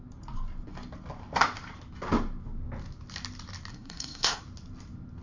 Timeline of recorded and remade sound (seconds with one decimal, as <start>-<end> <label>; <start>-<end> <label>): 0.0-3.7 recorded; 3.7-4.4 remade; 4.4-5.2 recorded